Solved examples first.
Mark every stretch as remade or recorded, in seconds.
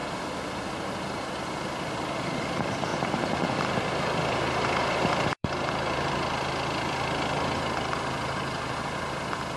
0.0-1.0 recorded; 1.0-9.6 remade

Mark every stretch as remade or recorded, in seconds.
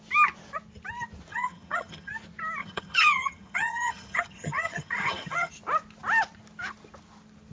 0.0-1.3 recorded; 1.3-2.1 remade; 2.1-2.6 recorded; 2.6-5.5 remade; 5.5-7.5 recorded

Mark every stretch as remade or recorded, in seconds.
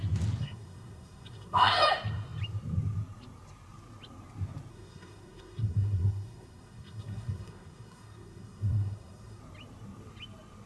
0.0-0.4 recorded; 0.4-1.8 remade; 1.8-4.7 recorded; 4.7-9.4 remade; 9.4-10.7 recorded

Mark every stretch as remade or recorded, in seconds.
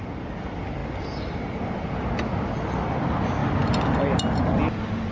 0.0-5.1 recorded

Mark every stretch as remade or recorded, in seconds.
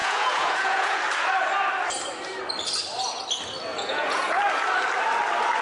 0.0-1.0 remade; 1.0-3.7 recorded; 3.7-4.4 remade; 4.4-5.6 recorded